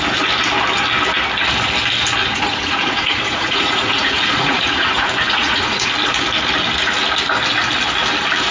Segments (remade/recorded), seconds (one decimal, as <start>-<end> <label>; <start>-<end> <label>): 0.0-2.2 recorded; 2.2-5.9 remade; 5.9-8.5 recorded